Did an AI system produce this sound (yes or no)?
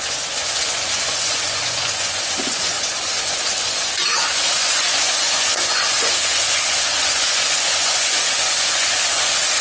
yes